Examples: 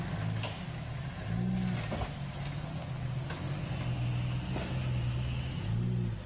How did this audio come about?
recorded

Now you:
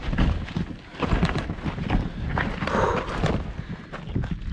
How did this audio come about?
recorded